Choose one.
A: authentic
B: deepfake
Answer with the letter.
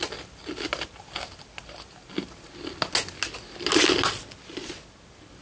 A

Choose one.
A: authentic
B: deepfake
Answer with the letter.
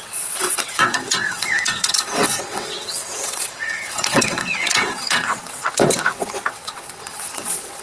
B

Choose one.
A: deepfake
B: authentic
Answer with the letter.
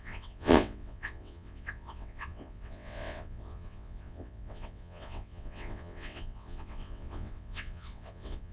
A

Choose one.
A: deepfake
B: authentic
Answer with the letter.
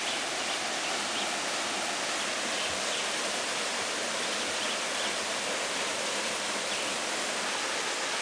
B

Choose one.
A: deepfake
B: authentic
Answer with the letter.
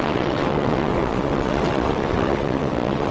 A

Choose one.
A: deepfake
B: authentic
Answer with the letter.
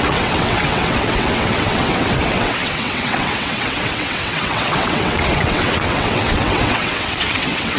A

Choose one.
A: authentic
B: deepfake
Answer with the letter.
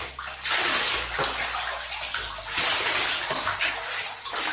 A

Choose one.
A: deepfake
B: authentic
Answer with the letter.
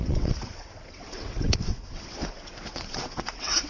A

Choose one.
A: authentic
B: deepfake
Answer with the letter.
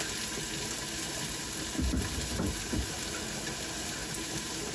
A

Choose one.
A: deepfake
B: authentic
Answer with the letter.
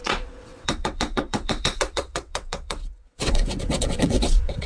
A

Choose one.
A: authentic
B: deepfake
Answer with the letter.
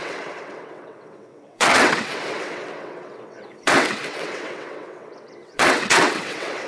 B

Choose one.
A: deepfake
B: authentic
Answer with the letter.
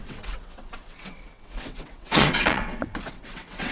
A